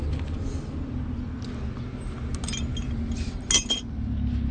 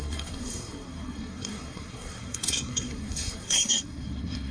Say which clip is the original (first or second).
first